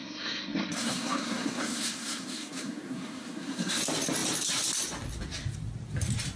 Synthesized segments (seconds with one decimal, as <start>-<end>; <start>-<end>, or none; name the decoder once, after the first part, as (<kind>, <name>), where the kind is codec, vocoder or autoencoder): 0.0-3.8 (codec, SNAC)